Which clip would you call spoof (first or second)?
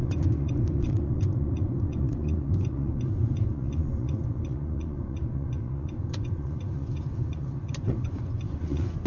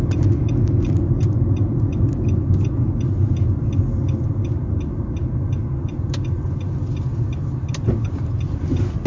first